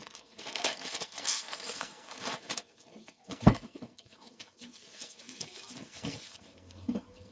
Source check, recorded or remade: remade